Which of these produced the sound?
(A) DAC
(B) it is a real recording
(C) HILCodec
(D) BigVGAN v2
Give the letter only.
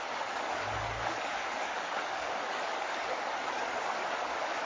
A